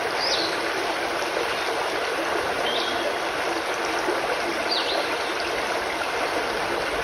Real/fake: real